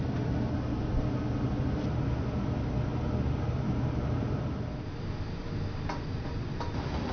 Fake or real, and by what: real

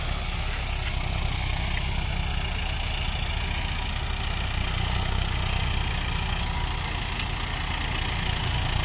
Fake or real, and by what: real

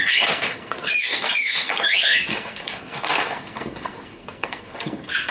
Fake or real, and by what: fake, codec, SNAC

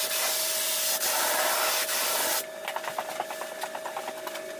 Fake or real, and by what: real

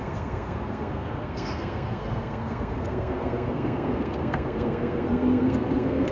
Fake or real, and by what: fake, codec, SNAC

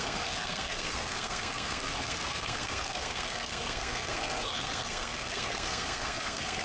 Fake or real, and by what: fake, codec, SNAC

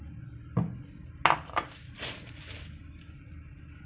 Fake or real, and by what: real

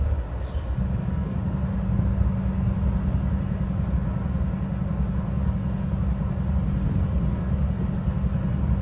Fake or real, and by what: real